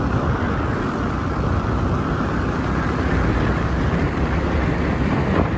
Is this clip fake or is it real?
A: real